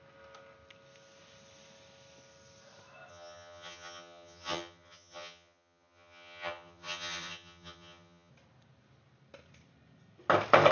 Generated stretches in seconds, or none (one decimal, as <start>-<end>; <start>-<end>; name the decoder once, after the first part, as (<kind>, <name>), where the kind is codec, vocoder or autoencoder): 3.1-8.3 (vocoder, HiFi-GAN)